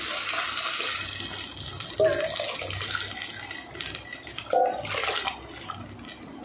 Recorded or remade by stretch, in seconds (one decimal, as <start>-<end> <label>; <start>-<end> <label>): 0.0-6.4 recorded